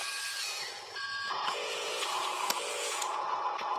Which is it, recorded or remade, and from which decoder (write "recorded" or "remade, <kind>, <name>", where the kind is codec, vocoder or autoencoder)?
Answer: remade, vocoder, Vocos